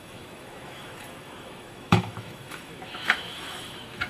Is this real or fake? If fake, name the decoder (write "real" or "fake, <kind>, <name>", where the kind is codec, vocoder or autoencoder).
fake, autoencoder, DAC-VAE